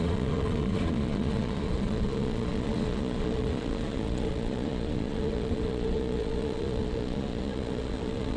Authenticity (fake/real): fake